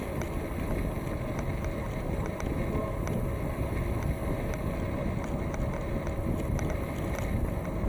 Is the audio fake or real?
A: real